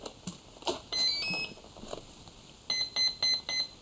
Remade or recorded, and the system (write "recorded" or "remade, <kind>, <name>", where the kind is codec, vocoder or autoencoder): recorded